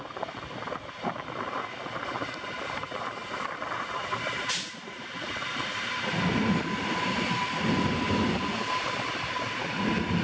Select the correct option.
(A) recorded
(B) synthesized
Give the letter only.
A